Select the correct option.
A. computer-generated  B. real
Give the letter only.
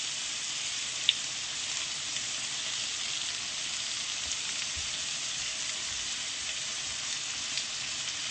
B